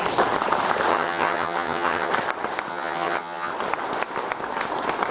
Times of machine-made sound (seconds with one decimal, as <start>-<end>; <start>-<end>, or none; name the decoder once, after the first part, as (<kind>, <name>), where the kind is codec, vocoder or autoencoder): 0.9-2.1 (vocoder, HiFi-GAN); 2.7-3.5